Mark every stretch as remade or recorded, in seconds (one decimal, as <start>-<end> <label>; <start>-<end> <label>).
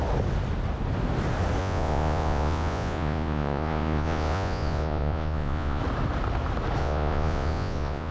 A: 0.0-1.6 recorded; 1.6-5.8 remade; 5.8-6.8 recorded; 6.8-8.1 remade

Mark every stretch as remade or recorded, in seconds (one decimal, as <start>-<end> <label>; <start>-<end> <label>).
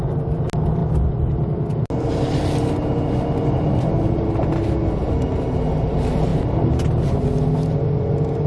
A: 0.0-8.5 recorded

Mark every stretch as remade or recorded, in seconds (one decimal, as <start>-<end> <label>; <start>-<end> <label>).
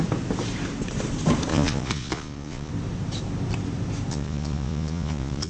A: 0.0-1.5 recorded; 1.5-2.7 remade; 2.7-4.1 recorded; 4.1-5.5 remade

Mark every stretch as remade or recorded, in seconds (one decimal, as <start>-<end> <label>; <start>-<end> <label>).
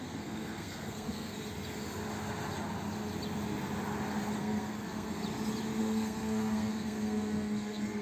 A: 0.0-1.4 remade; 1.4-4.4 recorded; 4.4-5.2 remade; 5.2-5.8 recorded; 5.8-8.0 remade